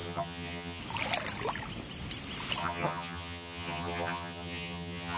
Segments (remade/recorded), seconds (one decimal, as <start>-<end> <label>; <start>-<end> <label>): 0.0-0.8 remade; 0.8-2.6 recorded; 2.6-5.2 remade